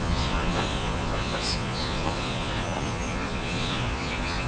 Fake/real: fake